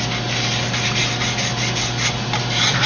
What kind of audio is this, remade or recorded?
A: recorded